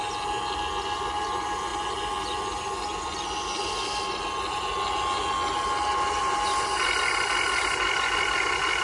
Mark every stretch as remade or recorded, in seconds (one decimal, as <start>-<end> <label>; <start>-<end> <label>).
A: 0.0-8.8 recorded